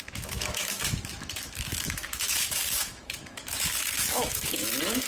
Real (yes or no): no